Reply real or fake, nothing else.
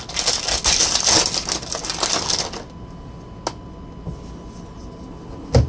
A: real